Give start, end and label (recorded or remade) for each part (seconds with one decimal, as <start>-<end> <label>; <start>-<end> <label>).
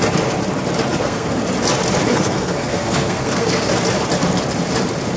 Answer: 0.0-0.9 recorded; 0.9-1.4 remade; 1.4-2.1 recorded; 2.1-3.7 remade; 3.7-5.2 recorded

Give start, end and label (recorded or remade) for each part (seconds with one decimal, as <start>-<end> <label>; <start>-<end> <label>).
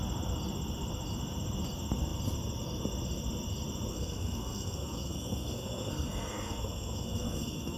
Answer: 0.0-3.9 recorded; 3.9-7.8 remade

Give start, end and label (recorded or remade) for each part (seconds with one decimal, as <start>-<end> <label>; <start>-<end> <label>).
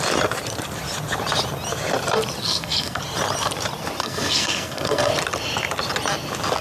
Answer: 0.0-2.4 recorded; 2.4-3.0 remade; 3.0-4.0 recorded; 4.0-5.1 remade; 5.1-6.6 recorded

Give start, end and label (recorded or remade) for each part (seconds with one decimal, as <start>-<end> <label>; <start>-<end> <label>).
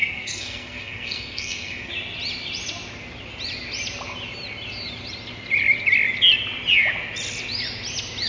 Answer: 0.0-1.9 remade; 1.9-8.3 recorded